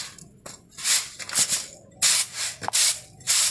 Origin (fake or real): real